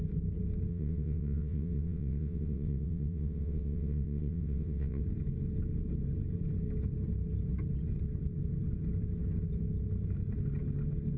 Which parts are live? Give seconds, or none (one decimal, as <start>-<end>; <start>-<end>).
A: 0.0-0.7; 5.0-11.2

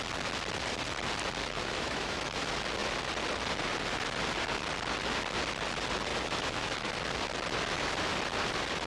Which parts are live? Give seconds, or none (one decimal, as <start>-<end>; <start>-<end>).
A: 0.0-1.4; 2.4-6.1; 6.9-8.9

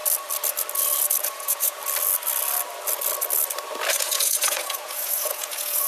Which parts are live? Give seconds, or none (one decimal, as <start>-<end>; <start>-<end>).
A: 0.0-1.2; 1.8-3.9

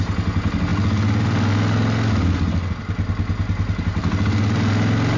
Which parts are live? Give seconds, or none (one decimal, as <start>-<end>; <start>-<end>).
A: 0.0-5.2

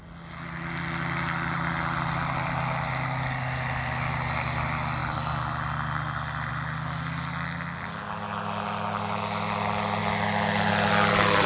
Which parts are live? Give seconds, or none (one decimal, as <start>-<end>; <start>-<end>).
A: 0.0-11.5

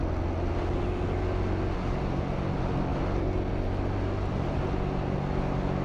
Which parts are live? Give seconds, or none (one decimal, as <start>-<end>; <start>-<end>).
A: 0.0-5.8

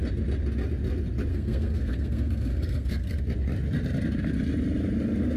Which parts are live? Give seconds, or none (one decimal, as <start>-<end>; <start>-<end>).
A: 0.0-1.3; 3.2-5.4